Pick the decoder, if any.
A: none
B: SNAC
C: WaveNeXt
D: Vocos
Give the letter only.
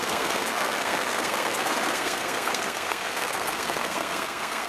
B